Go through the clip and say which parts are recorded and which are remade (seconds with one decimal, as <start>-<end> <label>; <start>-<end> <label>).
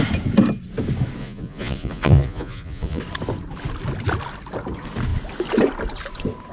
0.0-1.2 recorded; 1.2-3.0 remade; 3.0-6.5 recorded